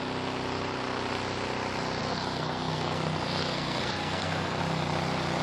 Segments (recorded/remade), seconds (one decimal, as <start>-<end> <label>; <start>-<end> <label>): 0.0-2.0 recorded; 2.0-4.6 remade; 4.6-5.4 recorded